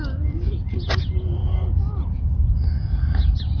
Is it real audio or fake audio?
real